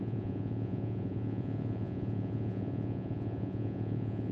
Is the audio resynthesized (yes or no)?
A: yes